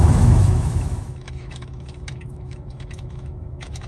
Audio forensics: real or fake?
fake